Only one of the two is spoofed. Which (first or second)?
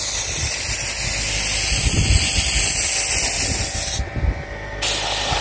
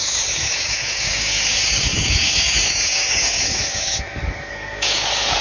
second